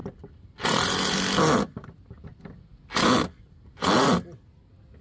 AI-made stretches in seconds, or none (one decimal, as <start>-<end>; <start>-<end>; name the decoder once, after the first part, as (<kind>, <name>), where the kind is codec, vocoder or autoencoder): none